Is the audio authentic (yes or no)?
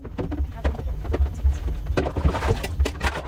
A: yes